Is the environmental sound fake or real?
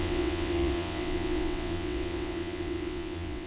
fake